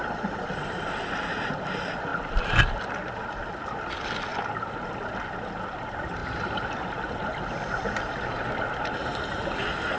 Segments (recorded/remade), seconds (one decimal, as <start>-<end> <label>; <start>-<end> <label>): 0.0-2.1 recorded; 2.1-3.9 remade; 3.9-6.2 recorded; 6.2-7.4 remade; 7.4-10.0 recorded

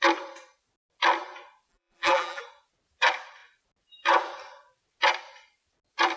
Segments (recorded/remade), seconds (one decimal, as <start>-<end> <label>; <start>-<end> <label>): 0.0-1.7 recorded; 1.7-2.4 remade; 2.4-6.2 recorded

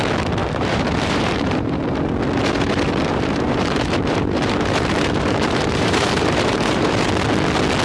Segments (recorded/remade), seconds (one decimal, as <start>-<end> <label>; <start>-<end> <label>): 0.0-0.4 recorded; 0.4-1.8 remade; 1.8-2.4 recorded; 2.4-7.1 remade; 7.1-7.8 recorded

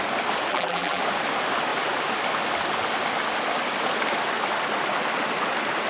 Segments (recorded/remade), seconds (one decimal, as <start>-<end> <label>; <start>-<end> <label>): 0.0-0.5 recorded; 0.5-1.0 remade; 1.0-5.9 recorded

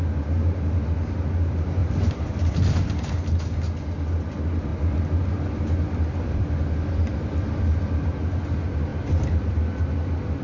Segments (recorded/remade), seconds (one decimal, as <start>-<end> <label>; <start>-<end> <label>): 0.0-1.8 recorded; 1.8-3.4 remade; 3.4-4.7 recorded; 4.7-8.1 remade; 8.1-8.9 recorded; 8.9-9.8 remade; 9.8-10.4 recorded

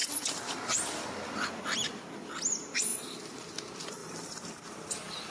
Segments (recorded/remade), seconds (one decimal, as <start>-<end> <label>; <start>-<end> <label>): 0.0-2.0 remade; 2.0-4.0 recorded; 4.0-4.5 remade; 4.5-5.3 recorded

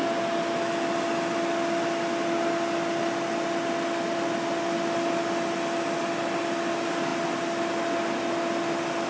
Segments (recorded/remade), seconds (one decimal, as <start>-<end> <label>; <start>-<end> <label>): 0.0-9.1 recorded

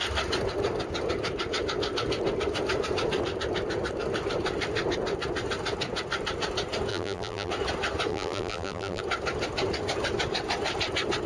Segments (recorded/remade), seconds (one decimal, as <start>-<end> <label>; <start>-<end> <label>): 0.0-6.9 recorded; 6.9-7.5 remade; 7.5-8.1 recorded; 8.1-9.0 remade; 9.0-11.3 recorded